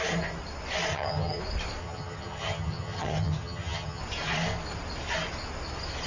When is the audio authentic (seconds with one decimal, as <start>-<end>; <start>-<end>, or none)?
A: 0.0-0.9; 1.4-1.8; 4.0-6.1